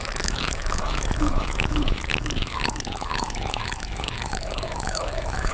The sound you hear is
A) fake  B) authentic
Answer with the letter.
A